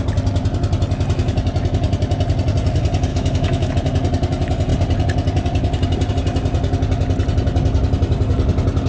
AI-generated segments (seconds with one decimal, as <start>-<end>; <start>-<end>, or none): 3.1-3.7